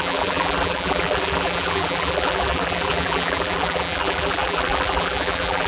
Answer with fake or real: fake